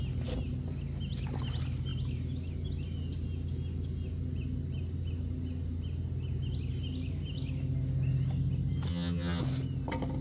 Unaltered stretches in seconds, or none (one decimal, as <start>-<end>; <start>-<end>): 0.0-8.9; 9.4-10.2

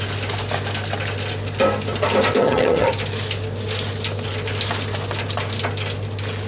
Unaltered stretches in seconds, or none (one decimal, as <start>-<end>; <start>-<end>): 0.0-2.4; 2.9-6.5

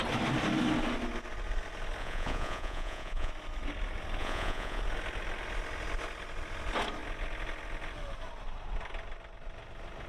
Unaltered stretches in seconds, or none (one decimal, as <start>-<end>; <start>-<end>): 0.0-2.0; 3.3-4.2; 4.8-10.1

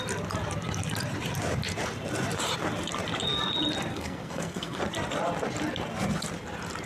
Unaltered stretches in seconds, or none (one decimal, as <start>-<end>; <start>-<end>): 0.0-3.9; 4.8-6.9

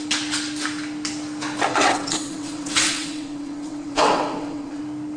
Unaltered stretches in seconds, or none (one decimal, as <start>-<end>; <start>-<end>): 0.0-1.7; 4.8-5.2